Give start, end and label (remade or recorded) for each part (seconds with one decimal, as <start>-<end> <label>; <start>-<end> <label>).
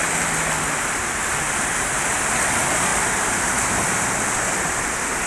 0.0-1.2 recorded; 1.2-2.2 remade; 2.2-2.9 recorded; 2.9-3.5 remade; 3.5-5.3 recorded